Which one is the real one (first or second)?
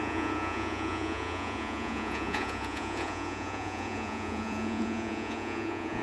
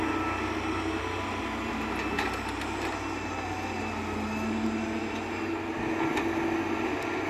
second